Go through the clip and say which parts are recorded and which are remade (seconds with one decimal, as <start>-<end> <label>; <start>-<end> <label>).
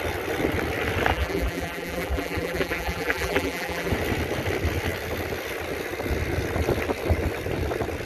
0.0-1.1 recorded; 1.1-3.9 remade; 3.9-8.1 recorded